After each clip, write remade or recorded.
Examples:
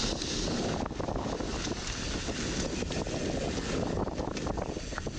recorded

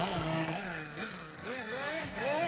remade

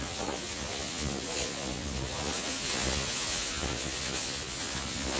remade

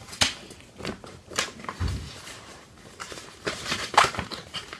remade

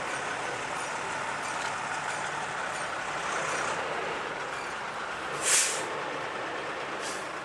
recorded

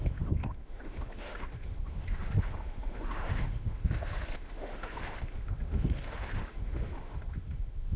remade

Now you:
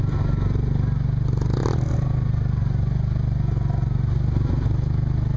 recorded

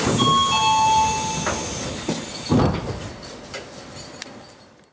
recorded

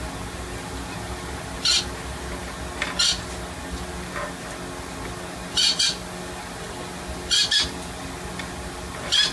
recorded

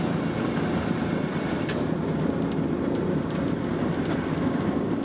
recorded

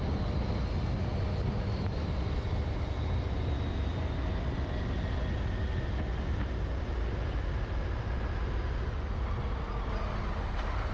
recorded